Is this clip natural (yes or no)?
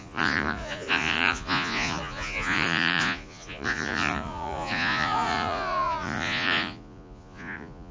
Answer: no